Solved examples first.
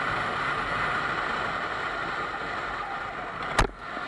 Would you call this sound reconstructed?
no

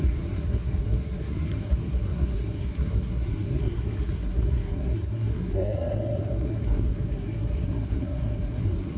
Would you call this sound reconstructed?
yes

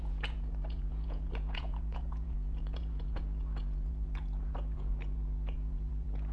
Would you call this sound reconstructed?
yes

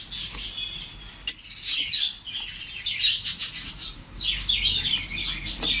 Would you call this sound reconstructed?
no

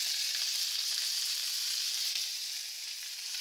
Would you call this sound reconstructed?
yes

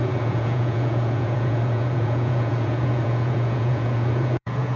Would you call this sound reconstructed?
yes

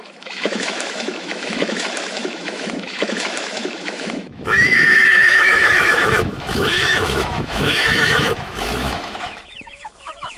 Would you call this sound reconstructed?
yes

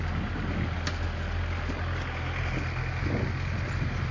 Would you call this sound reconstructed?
no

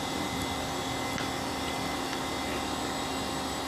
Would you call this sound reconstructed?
no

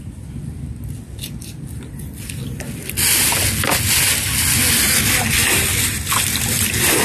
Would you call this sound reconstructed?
no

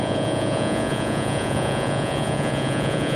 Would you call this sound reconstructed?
yes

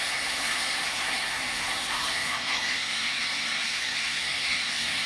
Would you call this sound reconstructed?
yes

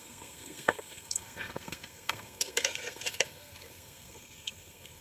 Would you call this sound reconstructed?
yes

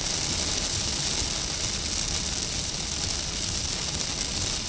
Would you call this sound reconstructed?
no